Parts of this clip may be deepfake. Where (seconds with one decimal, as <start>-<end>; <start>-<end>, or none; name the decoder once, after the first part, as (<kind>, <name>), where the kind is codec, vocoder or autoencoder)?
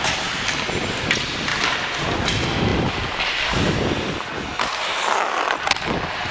none